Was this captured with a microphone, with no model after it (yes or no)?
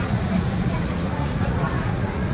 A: no